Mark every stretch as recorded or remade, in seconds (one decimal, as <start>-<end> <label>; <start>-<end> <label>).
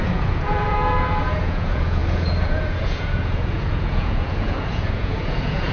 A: 0.0-5.7 remade